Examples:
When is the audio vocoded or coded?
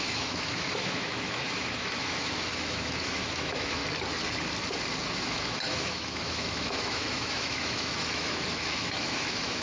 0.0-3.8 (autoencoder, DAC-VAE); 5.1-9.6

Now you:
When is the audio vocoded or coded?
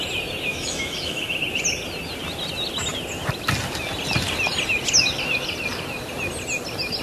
0.5-1.4 (autoencoder, DAC-VAE)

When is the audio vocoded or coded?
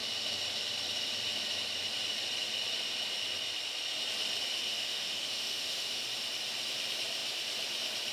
4.7-6.0 (autoencoder, DAC-VAE)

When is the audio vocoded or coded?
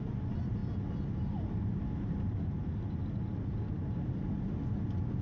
none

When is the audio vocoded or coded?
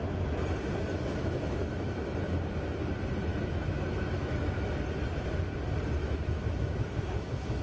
1.1-2.2 (autoencoder, DAC-VAE); 3.3-4.7; 6.0-7.6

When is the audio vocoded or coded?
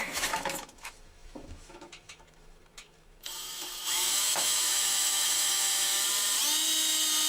0.0-5.9 (autoencoder, DAC-VAE)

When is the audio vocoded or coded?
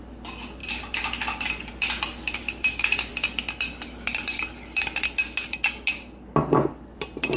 none